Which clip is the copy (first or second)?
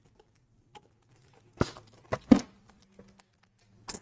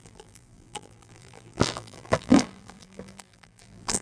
second